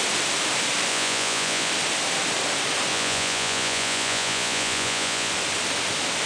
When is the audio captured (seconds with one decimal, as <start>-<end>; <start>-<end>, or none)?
0.0-0.9; 1.7-2.9; 5.3-6.3